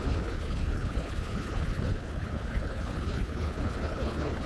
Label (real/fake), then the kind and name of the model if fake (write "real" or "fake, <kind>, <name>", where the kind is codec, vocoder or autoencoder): fake, codec, HILCodec